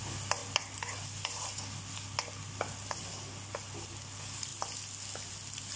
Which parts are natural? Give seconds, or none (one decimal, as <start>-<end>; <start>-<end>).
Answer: 0.0-5.8